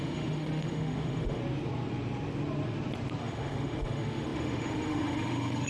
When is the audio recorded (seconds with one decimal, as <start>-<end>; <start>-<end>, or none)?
1.4-3.2